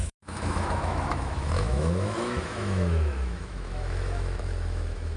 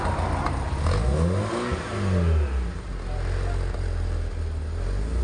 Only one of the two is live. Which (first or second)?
second